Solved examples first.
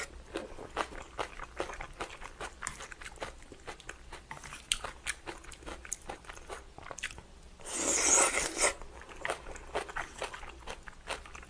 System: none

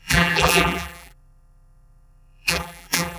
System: vocoder, BigVGAN v2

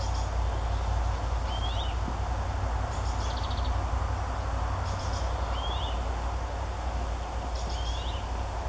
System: none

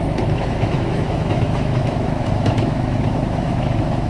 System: autoencoder, DAC-VAE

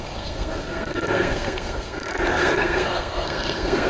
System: codec, SNAC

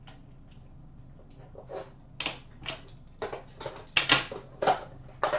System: none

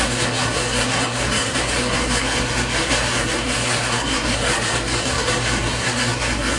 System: codec, SNAC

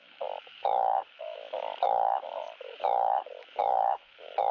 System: autoencoder, DAC-VAE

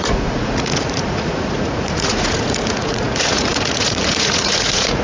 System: vocoder, Vocos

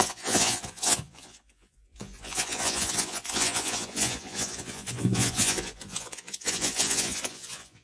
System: vocoder, Vocos